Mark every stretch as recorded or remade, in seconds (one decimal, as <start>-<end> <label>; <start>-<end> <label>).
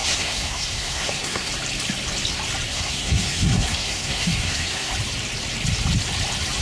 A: 0.0-1.5 remade; 1.5-2.7 recorded; 2.7-4.9 remade; 4.9-6.6 recorded